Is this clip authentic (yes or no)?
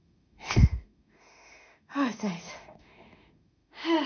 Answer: no